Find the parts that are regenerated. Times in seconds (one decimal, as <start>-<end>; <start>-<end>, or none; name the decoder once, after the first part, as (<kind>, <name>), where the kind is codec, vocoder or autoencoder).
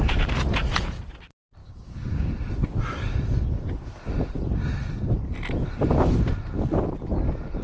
1.6-2.3 (codec, DAC)